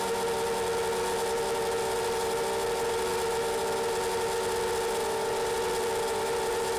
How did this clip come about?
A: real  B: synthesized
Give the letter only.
A